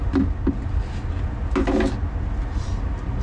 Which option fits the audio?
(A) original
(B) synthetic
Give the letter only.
A